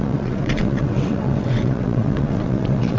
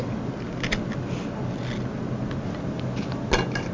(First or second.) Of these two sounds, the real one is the second